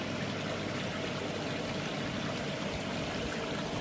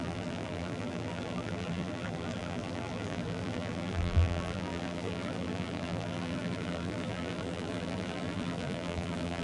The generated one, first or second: second